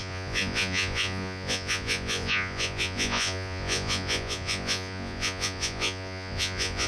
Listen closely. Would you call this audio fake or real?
fake